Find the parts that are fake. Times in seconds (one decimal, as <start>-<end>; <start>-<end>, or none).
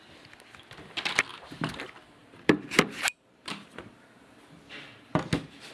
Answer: 1.3-1.8; 2.2-4.3